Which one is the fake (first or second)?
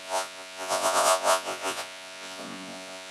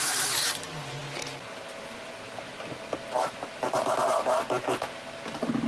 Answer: first